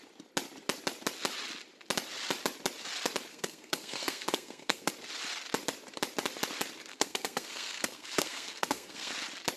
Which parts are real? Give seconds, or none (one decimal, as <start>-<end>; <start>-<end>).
0.0-3.3; 4.9-6.9; 9.1-9.6